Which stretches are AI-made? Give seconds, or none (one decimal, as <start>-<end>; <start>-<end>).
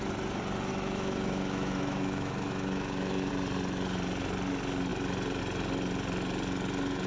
0.7-3.3